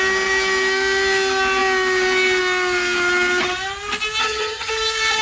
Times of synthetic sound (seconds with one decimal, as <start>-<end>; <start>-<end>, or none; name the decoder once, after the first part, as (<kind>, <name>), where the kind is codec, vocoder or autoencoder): 4.2-4.7 (vocoder, HiFi-GAN)